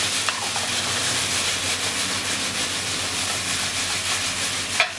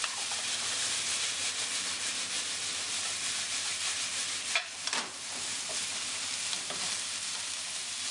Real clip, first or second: first